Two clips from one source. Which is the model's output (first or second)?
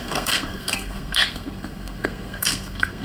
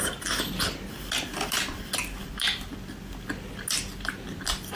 first